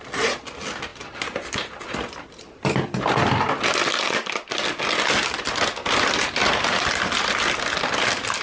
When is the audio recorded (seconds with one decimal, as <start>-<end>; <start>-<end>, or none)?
0.0-8.4